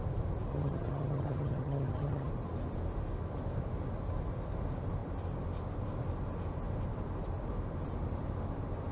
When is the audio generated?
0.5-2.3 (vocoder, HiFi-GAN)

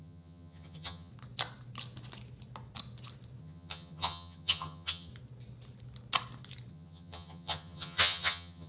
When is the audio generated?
0.0-1.1 (vocoder, HiFi-GAN); 3.4-5.1; 6.7-8.7

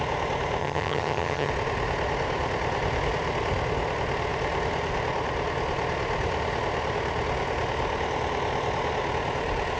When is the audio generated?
0.6-1.5 (vocoder, HiFi-GAN)

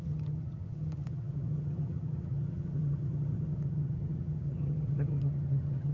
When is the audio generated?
0.0-5.9 (vocoder, HiFi-GAN)

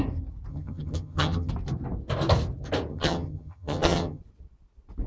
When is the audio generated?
0.5-1.5 (vocoder, HiFi-GAN); 2.9-4.2

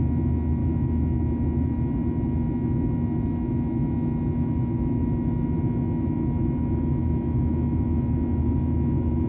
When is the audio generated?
none

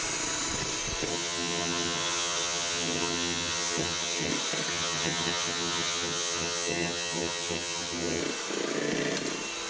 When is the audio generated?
1.1-4.3 (vocoder, HiFi-GAN); 4.7-8.2

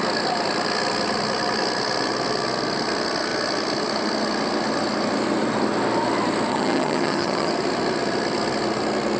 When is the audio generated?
6.5-7.5 (vocoder, HiFi-GAN)